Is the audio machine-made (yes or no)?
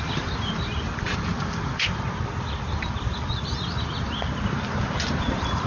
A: yes